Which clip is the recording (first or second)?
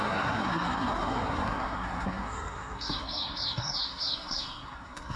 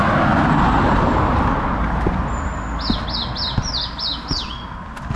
second